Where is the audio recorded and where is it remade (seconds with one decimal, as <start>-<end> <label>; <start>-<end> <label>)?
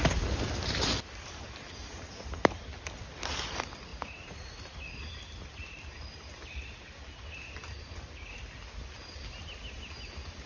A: 0.0-3.9 recorded; 3.9-4.6 remade; 4.6-10.5 recorded